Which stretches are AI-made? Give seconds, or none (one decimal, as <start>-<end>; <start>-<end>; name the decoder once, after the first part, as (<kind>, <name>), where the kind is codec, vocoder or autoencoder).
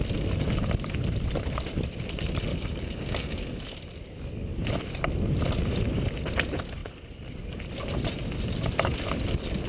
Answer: 2.5-3.6 (codec, DAC)